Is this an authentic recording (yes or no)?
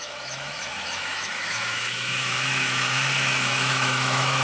no